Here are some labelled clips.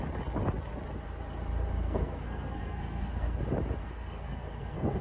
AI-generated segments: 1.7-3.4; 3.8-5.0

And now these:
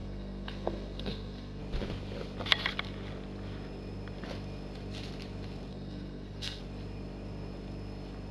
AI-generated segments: 0.0-1.6; 5.7-6.6

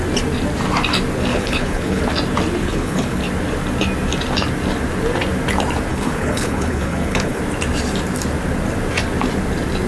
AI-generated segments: 1.3-2.0; 2.6-3.2; 5.9-7.4

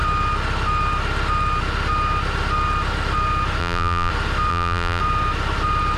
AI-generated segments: 3.6-4.1; 4.5-5.0

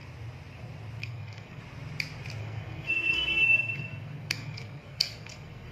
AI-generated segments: 1.0-1.6; 2.4-5.7

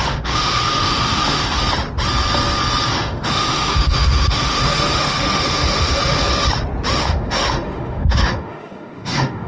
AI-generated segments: 0.0-1.6; 2.9-6.2; 7.0-9.5

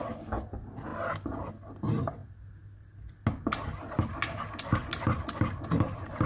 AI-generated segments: none